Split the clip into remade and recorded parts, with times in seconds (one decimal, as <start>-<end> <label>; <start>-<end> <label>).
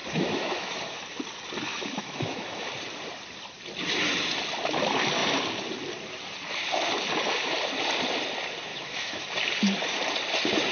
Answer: 0.0-1.0 remade; 1.0-1.7 recorded; 1.7-2.7 remade; 2.7-8.7 recorded; 8.7-9.3 remade; 9.3-10.7 recorded